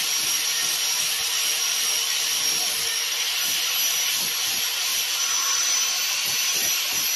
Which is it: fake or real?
real